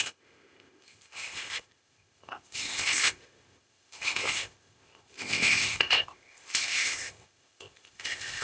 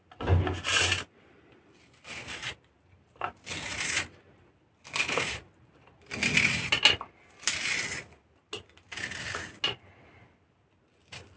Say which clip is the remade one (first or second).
first